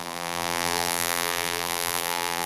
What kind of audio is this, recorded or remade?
remade